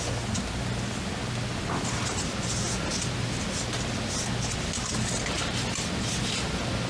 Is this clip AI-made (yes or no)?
no